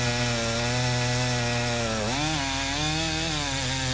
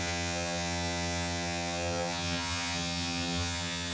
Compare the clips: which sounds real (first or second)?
first